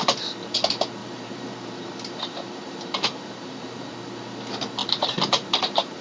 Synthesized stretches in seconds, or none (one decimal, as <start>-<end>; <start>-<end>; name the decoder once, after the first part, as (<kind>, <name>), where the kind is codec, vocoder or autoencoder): 1.0-3.9 (vocoder, BigVGAN v2); 4.8-6.0

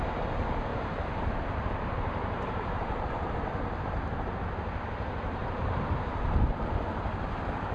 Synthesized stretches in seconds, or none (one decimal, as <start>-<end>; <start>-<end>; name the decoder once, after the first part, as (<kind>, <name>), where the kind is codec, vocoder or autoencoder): 0.7-4.3 (vocoder, BigVGAN v2); 5.4-5.9

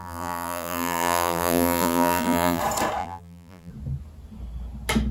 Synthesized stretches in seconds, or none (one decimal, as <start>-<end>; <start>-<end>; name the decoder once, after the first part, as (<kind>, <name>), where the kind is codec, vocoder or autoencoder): 0.0-2.6 (vocoder, BigVGAN v2); 3.0-3.7

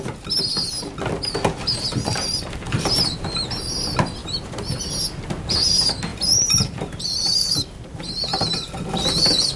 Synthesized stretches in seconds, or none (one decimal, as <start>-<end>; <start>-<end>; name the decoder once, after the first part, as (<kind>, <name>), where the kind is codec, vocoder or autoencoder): 4.2-4.8 (vocoder, BigVGAN v2); 6.1-8.8

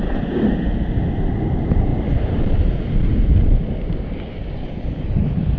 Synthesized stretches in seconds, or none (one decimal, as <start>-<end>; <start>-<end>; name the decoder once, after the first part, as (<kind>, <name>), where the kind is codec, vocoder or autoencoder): none

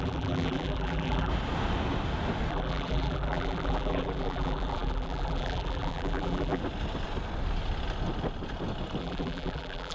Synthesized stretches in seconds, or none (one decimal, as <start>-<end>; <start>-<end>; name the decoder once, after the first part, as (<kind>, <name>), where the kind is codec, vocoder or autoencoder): 0.0-1.3 (vocoder, BigVGAN v2); 2.5-6.6; 9.0-9.9